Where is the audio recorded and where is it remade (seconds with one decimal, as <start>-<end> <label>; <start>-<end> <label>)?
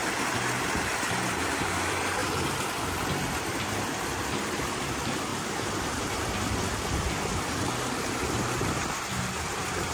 0.0-0.6 recorded; 0.6-9.9 remade